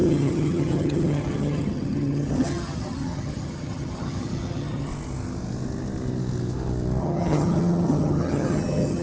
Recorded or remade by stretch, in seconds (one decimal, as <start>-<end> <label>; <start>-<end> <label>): 0.0-4.9 remade; 4.9-7.0 recorded; 7.0-9.0 remade